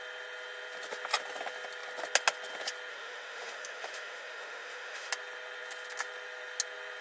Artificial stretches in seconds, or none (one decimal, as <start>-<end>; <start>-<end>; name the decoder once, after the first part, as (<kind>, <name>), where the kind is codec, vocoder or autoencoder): 2.9-5.1 (autoencoder, DAC-VAE)